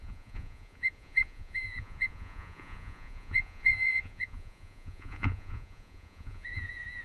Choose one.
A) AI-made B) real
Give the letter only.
A